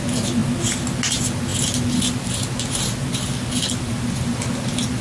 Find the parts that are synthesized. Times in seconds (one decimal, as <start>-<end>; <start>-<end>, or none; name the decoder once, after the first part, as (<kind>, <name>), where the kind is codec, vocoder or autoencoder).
none